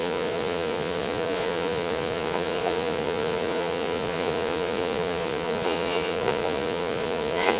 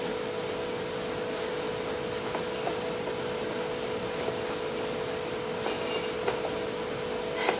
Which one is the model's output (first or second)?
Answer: first